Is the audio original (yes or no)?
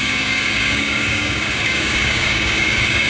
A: no